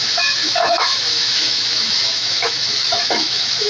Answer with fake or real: fake